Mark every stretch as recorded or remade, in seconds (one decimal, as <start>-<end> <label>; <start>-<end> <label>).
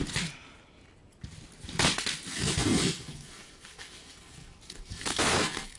0.0-2.3 recorded; 2.3-5.8 remade